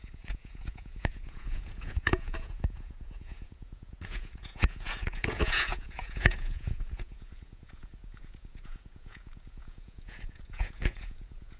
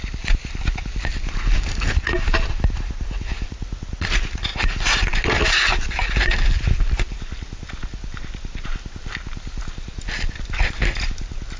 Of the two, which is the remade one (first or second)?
first